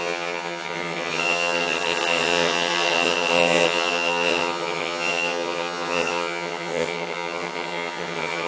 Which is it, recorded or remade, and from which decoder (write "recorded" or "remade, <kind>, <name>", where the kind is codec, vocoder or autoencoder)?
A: remade, vocoder, HiFi-GAN